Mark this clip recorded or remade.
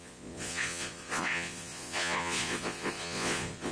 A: remade